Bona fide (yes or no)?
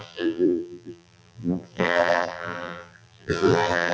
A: no